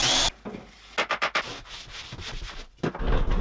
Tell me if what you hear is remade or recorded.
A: recorded